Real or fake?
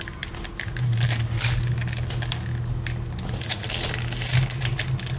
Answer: real